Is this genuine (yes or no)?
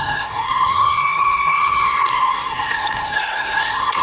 no